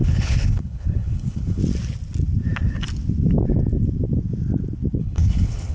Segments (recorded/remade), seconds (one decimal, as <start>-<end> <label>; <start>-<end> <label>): 0.0-1.6 remade; 1.6-5.0 recorded; 5.0-5.7 remade